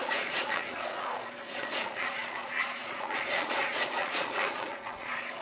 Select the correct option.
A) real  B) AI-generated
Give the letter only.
B